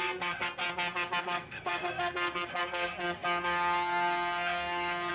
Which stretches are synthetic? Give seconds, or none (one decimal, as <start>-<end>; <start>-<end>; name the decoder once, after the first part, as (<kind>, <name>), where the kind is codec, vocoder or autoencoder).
0.0-0.6 (codec, SNAC); 1.2-5.1